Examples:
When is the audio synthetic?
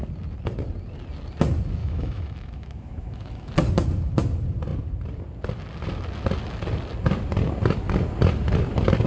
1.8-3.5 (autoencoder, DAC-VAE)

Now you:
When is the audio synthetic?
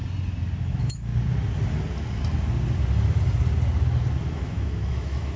0.6-1.1 (autoencoder, DAC-VAE); 4.3-5.4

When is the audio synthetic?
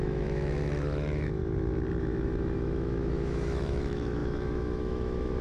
0.0-1.4 (autoencoder, DAC-VAE); 2.0-5.4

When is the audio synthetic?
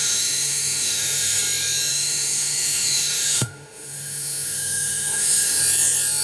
0.0-1.4 (autoencoder, DAC-VAE); 1.9-5.6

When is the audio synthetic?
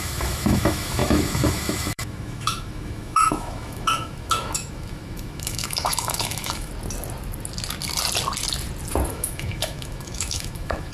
0.0-6.7 (autoencoder, DAC-VAE); 9.1-10.9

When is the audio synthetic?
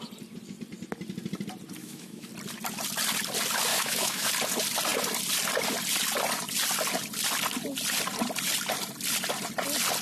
1.8-2.3 (autoencoder, DAC-VAE); 3.7-4.3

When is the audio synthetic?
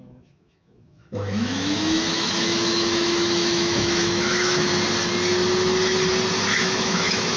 0.0-4.7 (autoencoder, DAC-VAE); 6.6-7.4